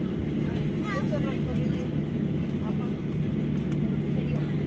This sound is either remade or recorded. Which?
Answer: recorded